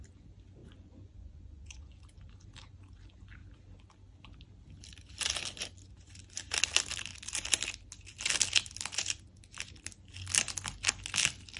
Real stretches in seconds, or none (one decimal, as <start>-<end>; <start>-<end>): 0.0-0.6; 2.0-11.6